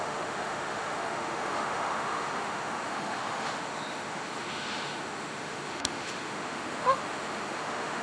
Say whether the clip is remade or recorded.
remade